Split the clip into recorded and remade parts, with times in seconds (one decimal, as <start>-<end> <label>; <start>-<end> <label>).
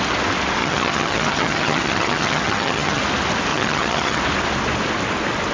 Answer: 0.0-0.6 recorded; 0.6-3.0 remade; 3.0-3.5 recorded; 3.5-4.2 remade; 4.2-5.5 recorded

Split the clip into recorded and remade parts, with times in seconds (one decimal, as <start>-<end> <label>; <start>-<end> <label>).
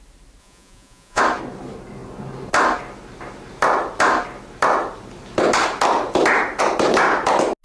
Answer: 0.0-0.4 recorded; 0.4-1.2 remade; 1.2-7.6 recorded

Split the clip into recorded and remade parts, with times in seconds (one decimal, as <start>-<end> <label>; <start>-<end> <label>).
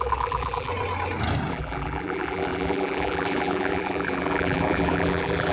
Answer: 0.0-0.7 remade; 0.7-1.5 recorded; 1.5-5.5 remade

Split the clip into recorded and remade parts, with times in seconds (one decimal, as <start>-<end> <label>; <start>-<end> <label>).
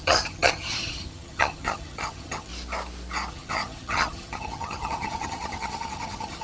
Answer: 0.0-2.5 remade; 2.5-3.3 recorded; 3.3-6.4 remade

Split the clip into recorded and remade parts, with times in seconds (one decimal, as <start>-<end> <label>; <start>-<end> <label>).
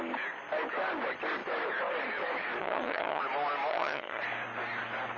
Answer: 0.0-2.6 recorded; 2.6-3.2 remade; 3.2-3.7 recorded; 3.7-4.2 remade; 4.2-5.2 recorded